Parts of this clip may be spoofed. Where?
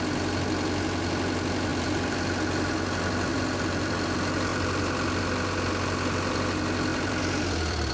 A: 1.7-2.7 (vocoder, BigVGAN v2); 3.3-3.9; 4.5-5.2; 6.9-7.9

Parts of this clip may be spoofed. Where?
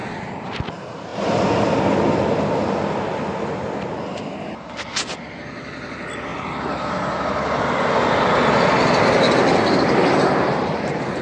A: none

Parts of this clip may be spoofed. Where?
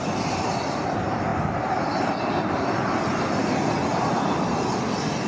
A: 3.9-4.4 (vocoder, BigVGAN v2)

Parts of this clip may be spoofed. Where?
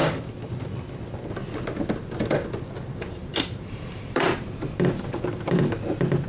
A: 0.0-0.5 (vocoder, BigVGAN v2); 3.2-5.7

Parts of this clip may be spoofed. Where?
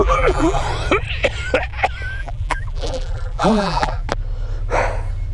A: 0.0-0.6 (vocoder, BigVGAN v2); 2.2-4.1